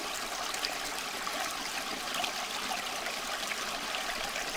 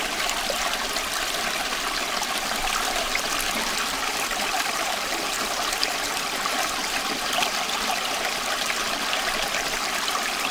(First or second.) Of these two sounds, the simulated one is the second